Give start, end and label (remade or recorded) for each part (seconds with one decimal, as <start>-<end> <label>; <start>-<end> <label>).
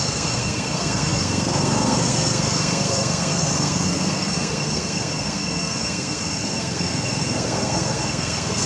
0.0-8.7 remade